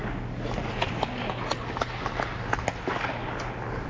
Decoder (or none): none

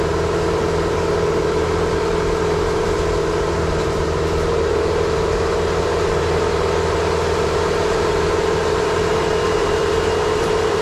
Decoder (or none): vocoder, BigVGAN v2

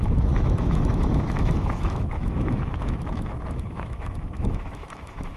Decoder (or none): autoencoder, DAC-VAE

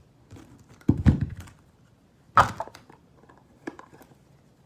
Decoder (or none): vocoder, BigVGAN v2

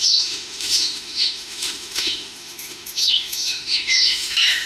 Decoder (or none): autoencoder, DAC-VAE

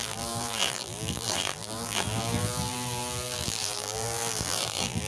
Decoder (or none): vocoder, BigVGAN v2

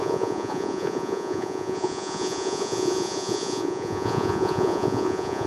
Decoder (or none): vocoder, Vocos